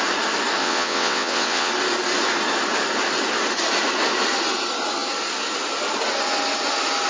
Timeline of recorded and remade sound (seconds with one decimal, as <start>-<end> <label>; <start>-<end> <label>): 0.0-0.6 recorded; 0.6-1.7 remade; 1.7-7.1 recorded